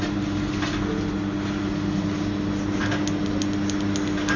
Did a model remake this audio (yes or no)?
no